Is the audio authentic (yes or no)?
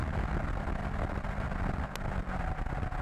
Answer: yes